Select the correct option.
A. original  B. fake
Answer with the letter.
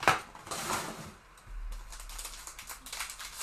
A